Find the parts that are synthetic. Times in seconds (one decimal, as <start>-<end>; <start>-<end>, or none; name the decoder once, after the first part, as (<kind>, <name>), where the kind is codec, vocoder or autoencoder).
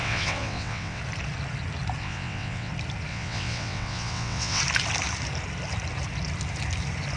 0.0-1.0 (vocoder, WaveNeXt); 2.0-2.7; 3.1-4.6